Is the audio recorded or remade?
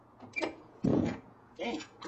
remade